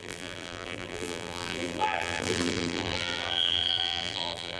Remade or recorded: remade